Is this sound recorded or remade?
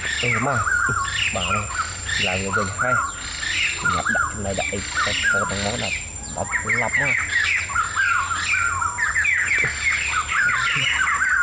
recorded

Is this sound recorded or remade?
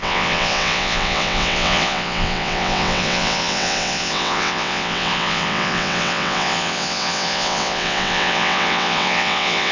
remade